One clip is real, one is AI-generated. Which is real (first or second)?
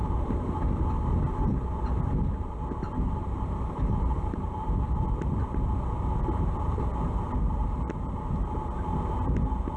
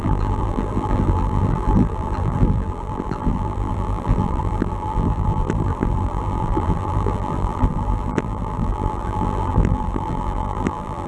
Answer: first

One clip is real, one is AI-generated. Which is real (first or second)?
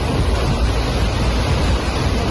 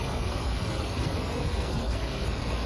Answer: first